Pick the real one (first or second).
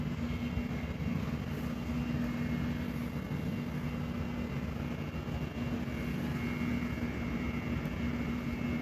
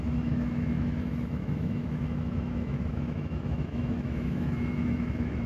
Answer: first